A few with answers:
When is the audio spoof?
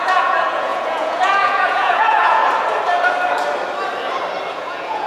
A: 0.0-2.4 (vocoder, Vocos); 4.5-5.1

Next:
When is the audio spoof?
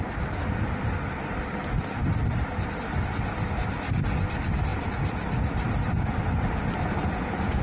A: 2.0-3.6 (vocoder, BigVGAN v2); 4.7-6.0